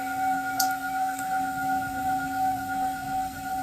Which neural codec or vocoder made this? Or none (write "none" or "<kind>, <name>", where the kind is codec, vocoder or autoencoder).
codec, SNAC